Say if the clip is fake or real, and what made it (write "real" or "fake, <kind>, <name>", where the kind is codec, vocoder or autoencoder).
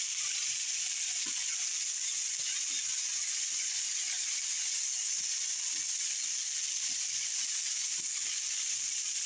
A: real